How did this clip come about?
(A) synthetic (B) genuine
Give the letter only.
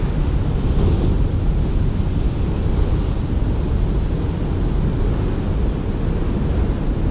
B